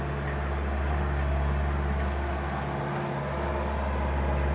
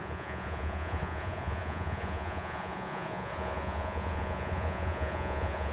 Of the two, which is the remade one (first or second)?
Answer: second